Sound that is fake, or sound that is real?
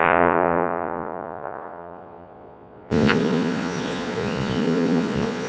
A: fake